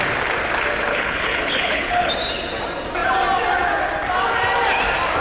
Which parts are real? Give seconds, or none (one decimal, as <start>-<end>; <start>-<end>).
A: 0.0-0.9; 2.1-5.2